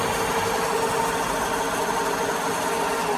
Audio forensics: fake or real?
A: real